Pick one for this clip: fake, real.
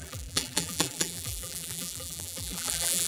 fake